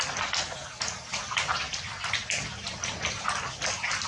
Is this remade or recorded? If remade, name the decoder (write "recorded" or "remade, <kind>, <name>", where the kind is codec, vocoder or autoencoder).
recorded